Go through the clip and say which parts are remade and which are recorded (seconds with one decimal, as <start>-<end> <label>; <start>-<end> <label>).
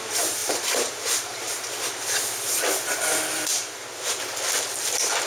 0.0-0.4 recorded; 0.4-1.7 remade; 1.7-5.3 recorded